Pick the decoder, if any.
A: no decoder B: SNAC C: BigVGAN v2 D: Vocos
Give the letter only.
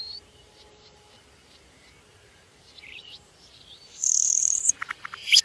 C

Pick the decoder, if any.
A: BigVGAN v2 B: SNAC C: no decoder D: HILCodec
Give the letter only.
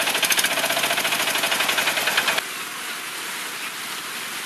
C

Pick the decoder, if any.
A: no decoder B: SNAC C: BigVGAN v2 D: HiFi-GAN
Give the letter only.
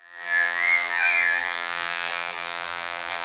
C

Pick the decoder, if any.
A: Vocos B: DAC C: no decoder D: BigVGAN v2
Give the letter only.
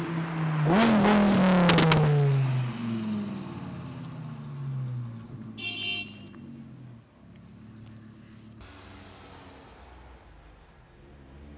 C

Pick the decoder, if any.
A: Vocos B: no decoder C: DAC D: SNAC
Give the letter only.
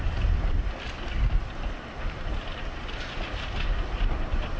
B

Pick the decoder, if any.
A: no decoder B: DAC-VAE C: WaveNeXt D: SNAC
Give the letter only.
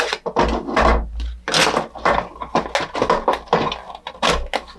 A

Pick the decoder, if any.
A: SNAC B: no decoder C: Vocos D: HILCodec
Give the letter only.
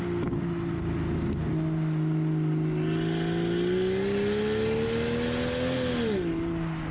B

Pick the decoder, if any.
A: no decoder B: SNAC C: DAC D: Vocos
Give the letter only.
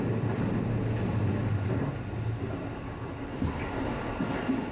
A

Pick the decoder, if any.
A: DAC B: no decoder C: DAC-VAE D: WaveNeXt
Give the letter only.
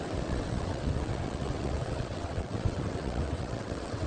D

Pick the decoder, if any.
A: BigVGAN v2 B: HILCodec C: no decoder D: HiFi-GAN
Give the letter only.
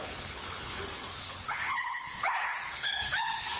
B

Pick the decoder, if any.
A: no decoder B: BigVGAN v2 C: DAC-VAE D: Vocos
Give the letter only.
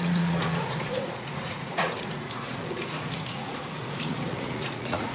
D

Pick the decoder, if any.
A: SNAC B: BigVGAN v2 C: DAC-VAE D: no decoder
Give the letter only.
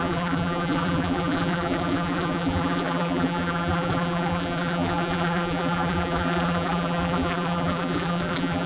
B